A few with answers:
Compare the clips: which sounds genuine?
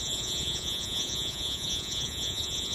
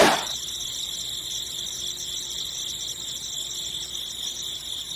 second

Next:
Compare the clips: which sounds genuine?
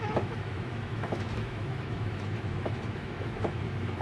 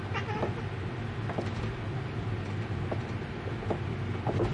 second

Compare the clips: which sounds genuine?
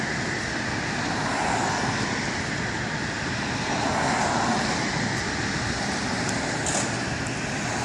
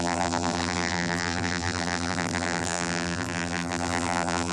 first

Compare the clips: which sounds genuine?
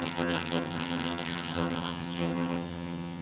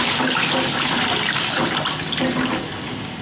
second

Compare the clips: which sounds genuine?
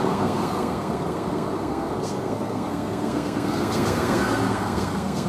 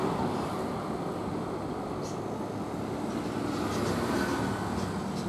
second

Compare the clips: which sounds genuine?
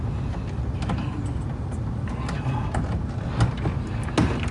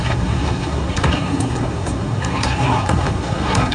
first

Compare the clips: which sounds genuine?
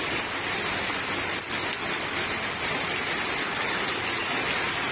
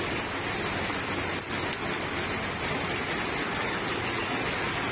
second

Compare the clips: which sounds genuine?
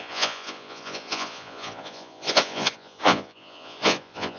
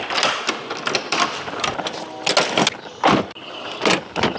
second